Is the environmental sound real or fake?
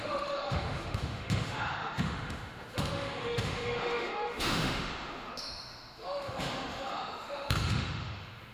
fake